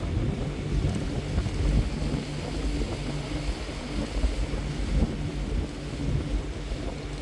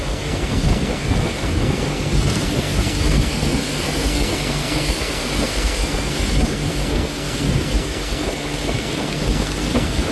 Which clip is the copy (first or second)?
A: second